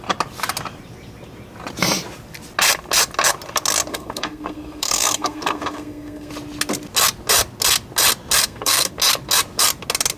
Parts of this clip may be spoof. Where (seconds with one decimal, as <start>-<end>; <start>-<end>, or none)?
3.9-6.3; 8.4-8.9